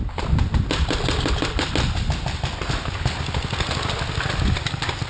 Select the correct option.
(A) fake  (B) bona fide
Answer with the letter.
B